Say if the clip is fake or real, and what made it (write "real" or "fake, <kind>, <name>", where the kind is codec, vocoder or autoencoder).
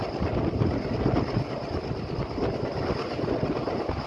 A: real